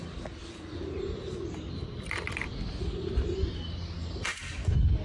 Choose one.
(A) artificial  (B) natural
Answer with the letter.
B